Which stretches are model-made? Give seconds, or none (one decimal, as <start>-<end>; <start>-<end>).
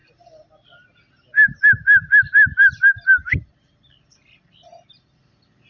3.3-5.7